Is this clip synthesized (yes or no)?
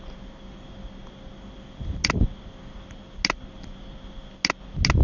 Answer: no